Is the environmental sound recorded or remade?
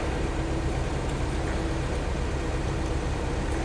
recorded